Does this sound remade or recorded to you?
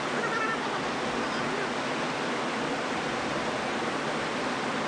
recorded